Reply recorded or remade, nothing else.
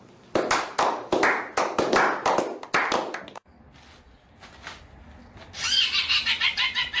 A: recorded